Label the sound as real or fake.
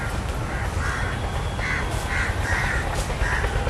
real